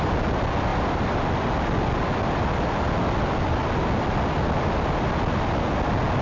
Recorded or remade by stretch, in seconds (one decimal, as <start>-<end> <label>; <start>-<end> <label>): 0.0-6.2 recorded